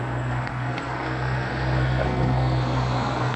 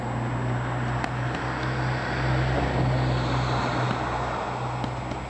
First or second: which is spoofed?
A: first